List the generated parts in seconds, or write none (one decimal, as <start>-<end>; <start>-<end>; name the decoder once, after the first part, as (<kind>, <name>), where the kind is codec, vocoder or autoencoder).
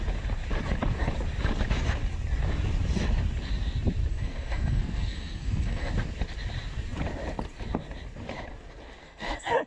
4.1-5.9 (codec, SNAC); 9.0-9.7